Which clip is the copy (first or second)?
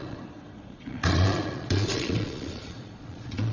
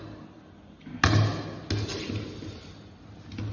first